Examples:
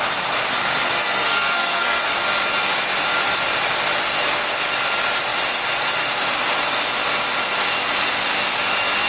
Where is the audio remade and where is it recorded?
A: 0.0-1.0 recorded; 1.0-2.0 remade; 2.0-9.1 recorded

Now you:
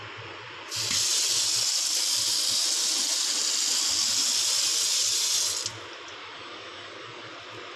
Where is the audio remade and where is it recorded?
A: 0.0-6.2 recorded; 6.2-7.3 remade; 7.3-7.8 recorded

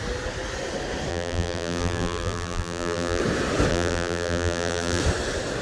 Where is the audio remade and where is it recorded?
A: 0.0-1.1 recorded; 1.1-3.2 remade; 3.2-3.7 recorded; 3.7-5.0 remade; 5.0-5.6 recorded

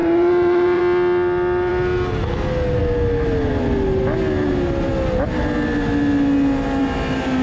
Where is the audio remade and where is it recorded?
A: 0.0-0.8 remade; 0.8-7.4 recorded

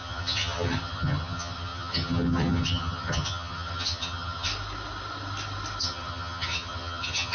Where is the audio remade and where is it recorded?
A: 0.0-4.5 remade; 4.5-5.8 recorded; 5.8-7.3 remade

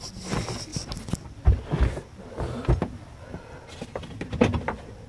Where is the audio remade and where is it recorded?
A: 0.0-5.1 recorded